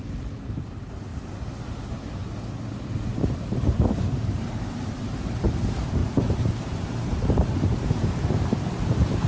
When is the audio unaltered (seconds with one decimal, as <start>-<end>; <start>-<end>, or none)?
1.1-1.8; 2.2-2.7